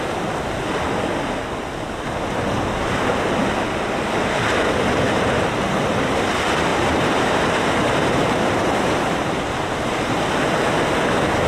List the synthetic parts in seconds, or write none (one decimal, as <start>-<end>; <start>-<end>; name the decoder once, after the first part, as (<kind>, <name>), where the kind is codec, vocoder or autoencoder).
6.7-10.3 (vocoder, BigVGAN v2)